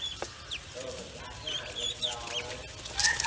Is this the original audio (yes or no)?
yes